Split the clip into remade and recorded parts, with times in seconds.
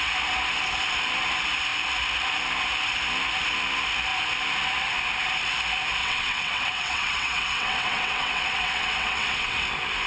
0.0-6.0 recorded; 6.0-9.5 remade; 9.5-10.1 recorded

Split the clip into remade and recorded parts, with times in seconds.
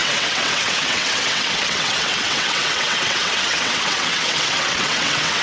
0.0-5.4 remade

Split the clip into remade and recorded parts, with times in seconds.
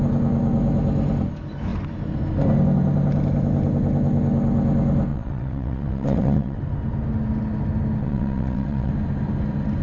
0.0-5.1 recorded; 5.1-6.6 remade; 6.6-8.0 recorded; 8.0-8.9 remade; 8.9-9.8 recorded